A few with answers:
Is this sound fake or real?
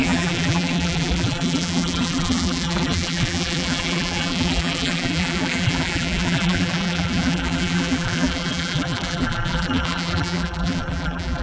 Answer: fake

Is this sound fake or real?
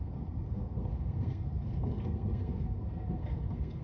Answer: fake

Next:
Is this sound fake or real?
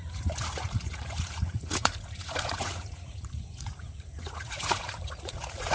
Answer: fake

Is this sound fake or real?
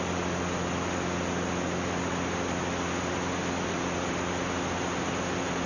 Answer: real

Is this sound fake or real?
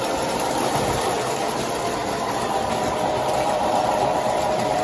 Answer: fake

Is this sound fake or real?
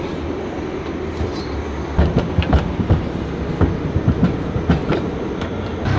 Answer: real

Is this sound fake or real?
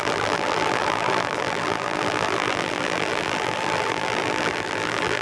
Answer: fake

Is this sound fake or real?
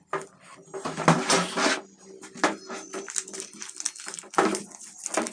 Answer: real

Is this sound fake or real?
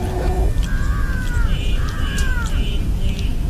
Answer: real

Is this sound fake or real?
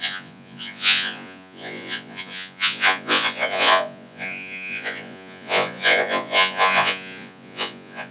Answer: fake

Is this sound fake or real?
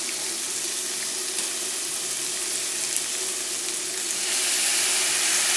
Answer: real